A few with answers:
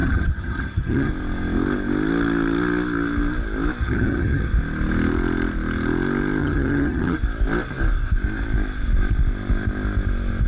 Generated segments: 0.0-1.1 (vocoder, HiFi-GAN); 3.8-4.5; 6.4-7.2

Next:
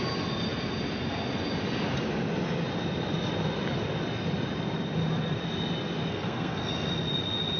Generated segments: 6.1-6.7 (codec, SNAC)

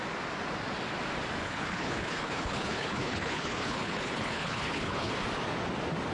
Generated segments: 1.4-5.1 (codec, HILCodec)

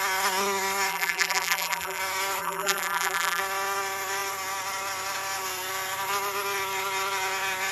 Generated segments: 0.9-2.0 (vocoder, BigVGAN v2); 2.4-3.4